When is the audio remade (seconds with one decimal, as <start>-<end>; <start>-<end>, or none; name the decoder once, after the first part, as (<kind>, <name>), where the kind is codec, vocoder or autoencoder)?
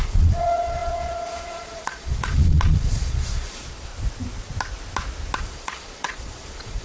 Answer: 0.0-3.9 (vocoder, Vocos); 5.4-6.8